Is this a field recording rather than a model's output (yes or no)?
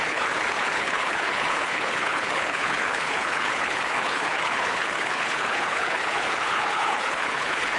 no